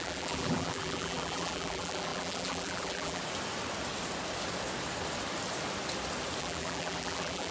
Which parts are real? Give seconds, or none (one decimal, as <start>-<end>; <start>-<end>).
3.2-6.4